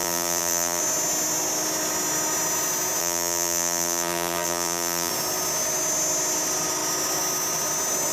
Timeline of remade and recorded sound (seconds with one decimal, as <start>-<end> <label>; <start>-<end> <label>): 0.0-0.8 remade; 0.8-3.0 recorded; 3.0-5.1 remade; 5.1-8.1 recorded